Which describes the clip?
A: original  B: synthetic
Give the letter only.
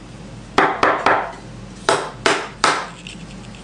A